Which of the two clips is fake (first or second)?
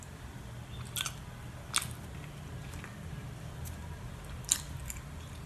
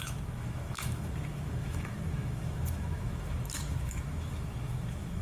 second